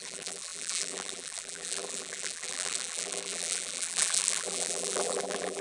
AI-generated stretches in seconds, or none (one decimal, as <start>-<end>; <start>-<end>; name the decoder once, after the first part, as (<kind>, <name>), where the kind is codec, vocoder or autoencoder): 0.0-5.6 (vocoder, BigVGAN v2)

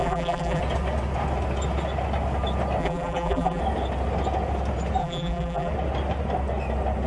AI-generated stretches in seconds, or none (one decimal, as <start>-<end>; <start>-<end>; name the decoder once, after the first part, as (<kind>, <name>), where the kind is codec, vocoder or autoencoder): 0.0-0.6 (vocoder, BigVGAN v2); 2.8-3.6; 5.0-5.7